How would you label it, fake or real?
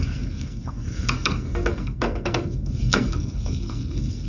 fake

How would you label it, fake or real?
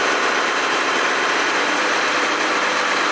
fake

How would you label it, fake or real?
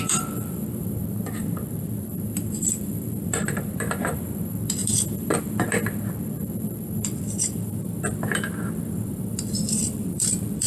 fake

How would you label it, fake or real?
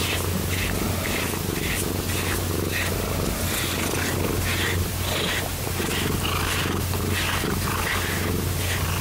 real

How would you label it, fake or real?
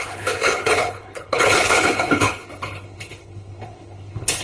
fake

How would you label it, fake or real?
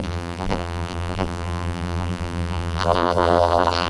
fake